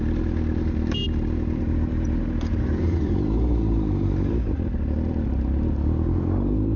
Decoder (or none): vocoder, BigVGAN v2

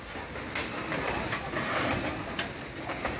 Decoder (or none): vocoder, BigVGAN v2